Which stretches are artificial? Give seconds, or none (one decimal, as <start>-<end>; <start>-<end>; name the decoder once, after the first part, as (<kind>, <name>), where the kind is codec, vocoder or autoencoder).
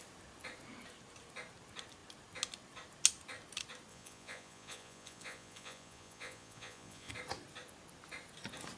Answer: 3.9-7.1 (vocoder, Vocos)